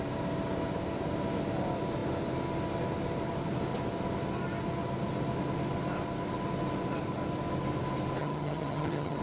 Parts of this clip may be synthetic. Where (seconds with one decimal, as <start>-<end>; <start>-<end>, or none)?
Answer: 8.2-9.2